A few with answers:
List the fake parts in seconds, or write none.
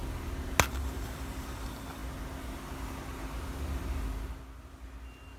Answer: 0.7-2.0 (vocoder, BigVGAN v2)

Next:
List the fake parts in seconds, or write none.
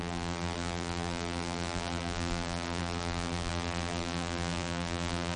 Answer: 0.0-5.4 (vocoder, BigVGAN v2)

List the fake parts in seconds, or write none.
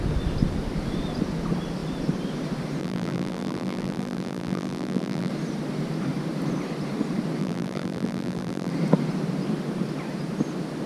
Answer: 2.8-5.3 (vocoder, BigVGAN v2); 7.4-8.7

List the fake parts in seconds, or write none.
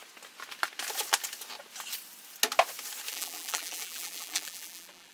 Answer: 3.1-5.1 (vocoder, BigVGAN v2)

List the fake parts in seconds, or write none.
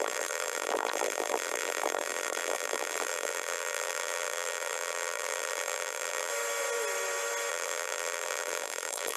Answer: 0.0-6.3 (vocoder, BigVGAN v2); 7.5-9.2